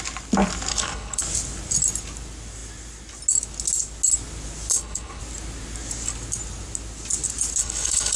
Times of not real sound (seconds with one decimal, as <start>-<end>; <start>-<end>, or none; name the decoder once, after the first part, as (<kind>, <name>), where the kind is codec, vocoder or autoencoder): 0.7-1.2 (codec, HILCodec); 4.7-5.2; 7.6-8.2

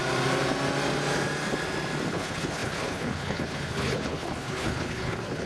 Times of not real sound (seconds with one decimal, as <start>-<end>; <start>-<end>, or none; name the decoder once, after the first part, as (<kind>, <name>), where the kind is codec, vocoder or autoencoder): 2.1-5.5 (codec, HILCodec)

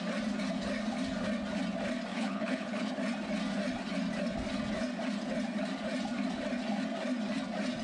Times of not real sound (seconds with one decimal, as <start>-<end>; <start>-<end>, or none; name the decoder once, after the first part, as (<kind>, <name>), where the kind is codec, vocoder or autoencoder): 2.1-2.9 (codec, HILCodec)

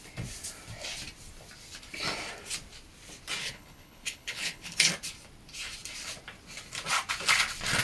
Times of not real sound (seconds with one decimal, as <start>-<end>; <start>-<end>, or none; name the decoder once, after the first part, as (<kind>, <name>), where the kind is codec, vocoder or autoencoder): 3.4-4.9 (codec, HILCodec)